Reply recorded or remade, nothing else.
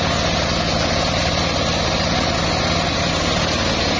recorded